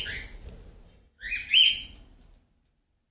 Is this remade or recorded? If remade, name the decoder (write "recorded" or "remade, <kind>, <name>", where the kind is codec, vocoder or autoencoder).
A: recorded